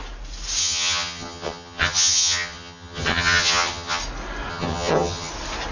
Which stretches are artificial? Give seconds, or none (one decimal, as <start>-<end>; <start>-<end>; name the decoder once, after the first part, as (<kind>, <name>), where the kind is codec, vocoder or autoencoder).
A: 0.6-4.0 (vocoder, HiFi-GAN); 4.5-5.3